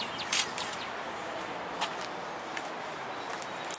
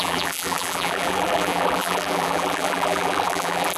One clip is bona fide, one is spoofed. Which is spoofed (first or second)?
second